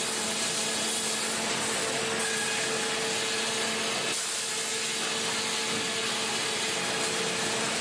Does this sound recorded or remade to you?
recorded